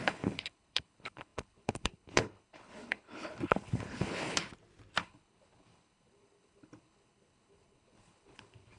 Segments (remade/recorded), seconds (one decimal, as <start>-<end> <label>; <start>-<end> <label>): 0.0-4.5 remade; 4.5-5.0 recorded; 5.0-8.8 remade